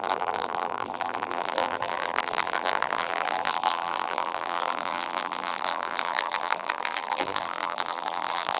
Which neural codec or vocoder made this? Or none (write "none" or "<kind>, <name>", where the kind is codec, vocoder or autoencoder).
vocoder, BigVGAN v2